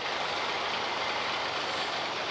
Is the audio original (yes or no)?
yes